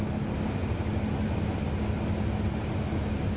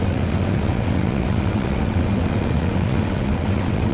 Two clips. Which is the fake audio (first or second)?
second